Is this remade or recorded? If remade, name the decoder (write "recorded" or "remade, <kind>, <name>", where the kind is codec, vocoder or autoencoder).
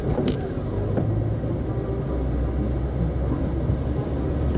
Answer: recorded